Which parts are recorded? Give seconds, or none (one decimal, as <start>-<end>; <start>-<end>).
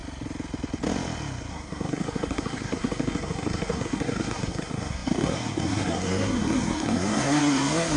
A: 0.0-1.5